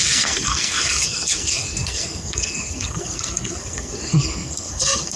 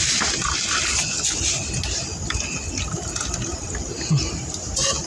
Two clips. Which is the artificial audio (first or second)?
first